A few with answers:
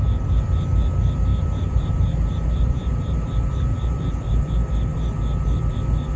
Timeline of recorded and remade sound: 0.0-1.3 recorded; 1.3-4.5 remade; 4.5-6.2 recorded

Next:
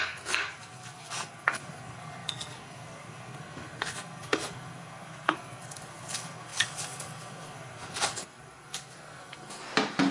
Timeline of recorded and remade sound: 0.0-9.6 remade; 9.6-10.1 recorded

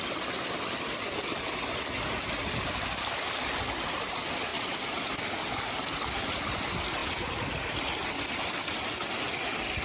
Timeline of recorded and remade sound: 0.0-4.5 recorded; 4.5-6.6 remade; 6.6-7.0 recorded; 7.0-7.8 remade; 7.8-9.8 recorded

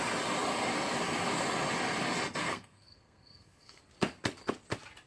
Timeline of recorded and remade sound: 0.0-2.4 recorded; 2.4-3.8 remade; 3.8-5.1 recorded

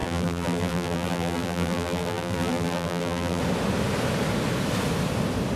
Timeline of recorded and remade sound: 0.0-3.4 remade; 3.4-5.6 recorded

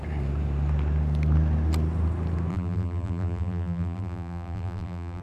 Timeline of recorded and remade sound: 0.0-2.5 recorded; 2.5-5.2 remade

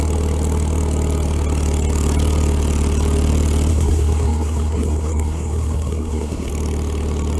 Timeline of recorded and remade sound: 0.0-3.7 recorded; 3.7-6.5 remade; 6.5-7.4 recorded